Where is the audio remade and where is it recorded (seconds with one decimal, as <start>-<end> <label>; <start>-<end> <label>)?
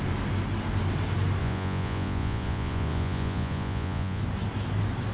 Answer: 0.0-1.4 recorded; 1.4-4.2 remade; 4.2-5.1 recorded